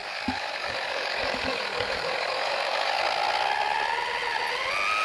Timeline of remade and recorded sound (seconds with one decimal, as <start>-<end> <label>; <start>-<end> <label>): 0.0-3.0 remade; 3.0-5.0 recorded